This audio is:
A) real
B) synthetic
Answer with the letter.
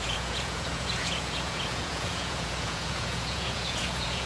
B